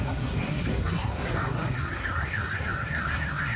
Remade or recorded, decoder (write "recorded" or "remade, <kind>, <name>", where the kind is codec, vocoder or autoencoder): remade, codec, SNAC